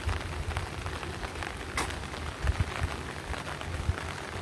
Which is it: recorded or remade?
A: recorded